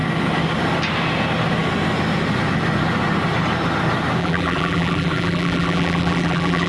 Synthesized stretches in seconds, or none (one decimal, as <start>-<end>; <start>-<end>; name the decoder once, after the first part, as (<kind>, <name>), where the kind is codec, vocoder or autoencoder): 4.2-6.7 (vocoder, BigVGAN v2)